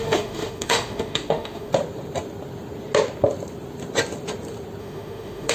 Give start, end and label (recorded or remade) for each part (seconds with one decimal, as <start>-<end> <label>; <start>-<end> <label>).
0.0-1.7 remade; 1.7-4.8 recorded; 4.8-5.5 remade